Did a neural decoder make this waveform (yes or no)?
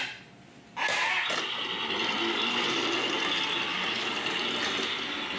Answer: no